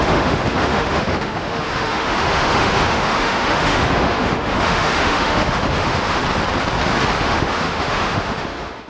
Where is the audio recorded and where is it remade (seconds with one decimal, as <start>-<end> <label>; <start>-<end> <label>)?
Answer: 0.0-6.2 remade; 6.2-7.2 recorded; 7.2-8.9 remade